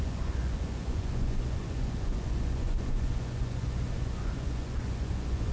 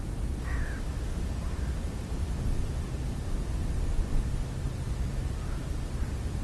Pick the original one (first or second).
second